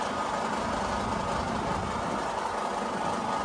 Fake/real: real